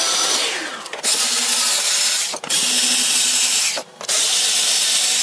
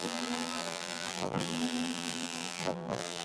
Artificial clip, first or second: second